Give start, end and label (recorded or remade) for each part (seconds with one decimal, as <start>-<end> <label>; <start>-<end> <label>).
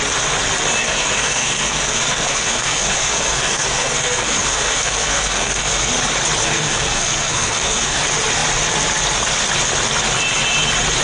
0.0-0.8 recorded; 0.8-5.9 remade; 5.9-6.4 recorded; 6.4-8.0 remade; 8.0-11.0 recorded